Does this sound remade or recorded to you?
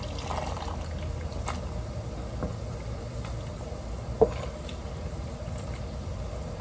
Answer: recorded